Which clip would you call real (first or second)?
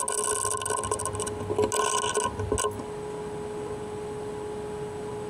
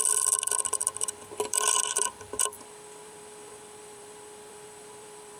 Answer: first